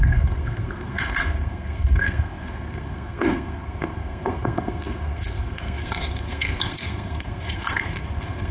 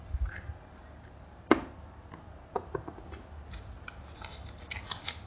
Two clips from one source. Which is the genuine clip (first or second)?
second